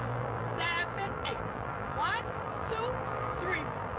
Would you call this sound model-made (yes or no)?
yes